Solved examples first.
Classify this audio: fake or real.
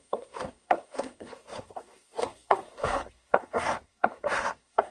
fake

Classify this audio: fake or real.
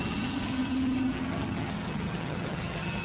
fake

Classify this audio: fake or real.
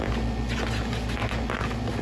real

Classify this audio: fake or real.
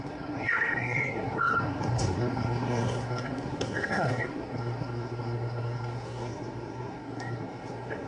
fake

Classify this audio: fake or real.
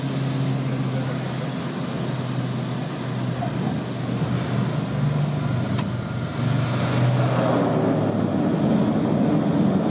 real